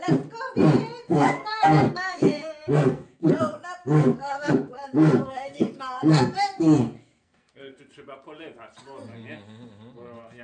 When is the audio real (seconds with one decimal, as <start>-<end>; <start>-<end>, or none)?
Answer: 0.0-1.0; 3.4-3.8; 7.8-10.4